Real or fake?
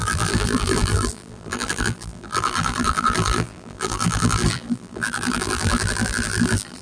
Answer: fake